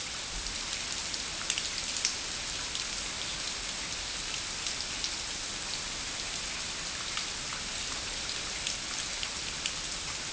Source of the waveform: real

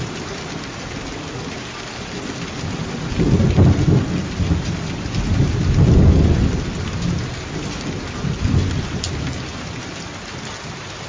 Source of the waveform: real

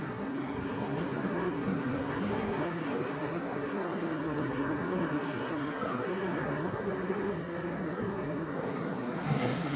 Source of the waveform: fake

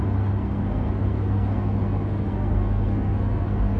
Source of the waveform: fake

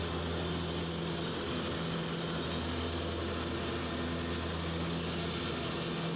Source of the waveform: real